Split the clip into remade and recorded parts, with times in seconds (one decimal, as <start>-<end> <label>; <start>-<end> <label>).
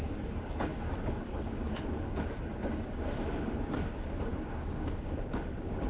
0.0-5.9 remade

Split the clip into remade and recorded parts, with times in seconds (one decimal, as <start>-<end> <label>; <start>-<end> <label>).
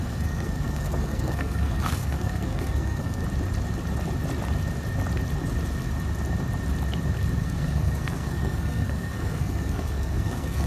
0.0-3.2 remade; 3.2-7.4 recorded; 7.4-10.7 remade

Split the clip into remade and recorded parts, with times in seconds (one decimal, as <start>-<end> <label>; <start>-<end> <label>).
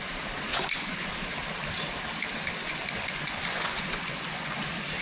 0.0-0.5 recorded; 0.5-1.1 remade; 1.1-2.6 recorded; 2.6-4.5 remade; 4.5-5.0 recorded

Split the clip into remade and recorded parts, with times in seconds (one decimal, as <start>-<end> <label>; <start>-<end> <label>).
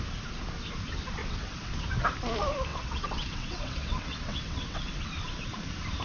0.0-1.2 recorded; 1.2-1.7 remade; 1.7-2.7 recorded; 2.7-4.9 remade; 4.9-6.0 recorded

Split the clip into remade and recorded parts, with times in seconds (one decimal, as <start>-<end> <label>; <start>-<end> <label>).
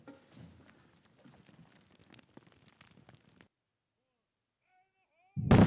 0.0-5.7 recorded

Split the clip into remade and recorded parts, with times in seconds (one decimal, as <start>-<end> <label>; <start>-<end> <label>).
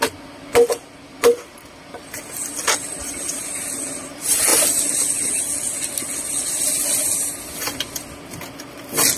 0.0-9.2 recorded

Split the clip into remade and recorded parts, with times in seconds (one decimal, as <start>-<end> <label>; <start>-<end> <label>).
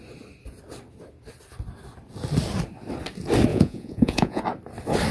0.0-3.5 recorded; 3.5-4.4 remade; 4.4-5.1 recorded